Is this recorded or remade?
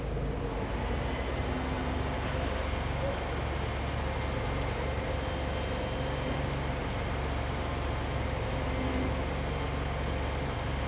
recorded